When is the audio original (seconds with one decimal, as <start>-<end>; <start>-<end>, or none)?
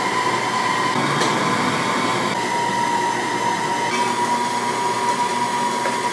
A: 0.0-6.1